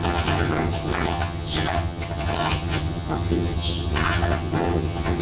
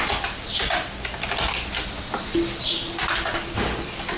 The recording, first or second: second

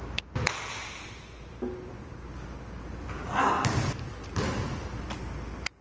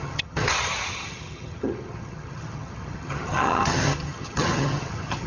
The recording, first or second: first